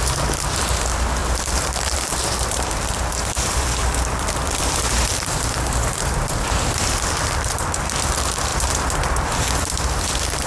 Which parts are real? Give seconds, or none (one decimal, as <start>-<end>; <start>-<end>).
0.0-1.2; 6.5-10.5

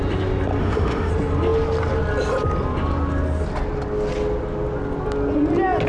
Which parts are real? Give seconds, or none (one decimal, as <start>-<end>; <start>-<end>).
0.0-0.6; 1.1-5.9